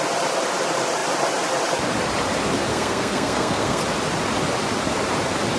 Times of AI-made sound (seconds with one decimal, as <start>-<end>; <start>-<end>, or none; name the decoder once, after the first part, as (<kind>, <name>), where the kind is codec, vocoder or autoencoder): 2.7-3.8 (codec, SNAC)